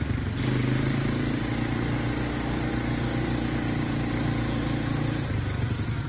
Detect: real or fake real